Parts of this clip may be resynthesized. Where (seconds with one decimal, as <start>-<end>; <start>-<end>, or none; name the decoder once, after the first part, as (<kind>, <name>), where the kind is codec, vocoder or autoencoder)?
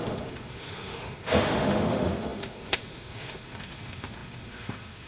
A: 0.0-5.1 (autoencoder, DAC-VAE)